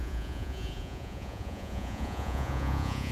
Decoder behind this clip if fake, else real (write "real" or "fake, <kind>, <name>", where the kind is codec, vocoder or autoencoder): fake, vocoder, Vocos